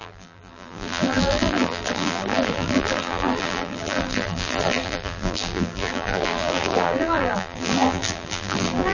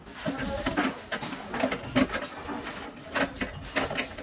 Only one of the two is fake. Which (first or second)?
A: first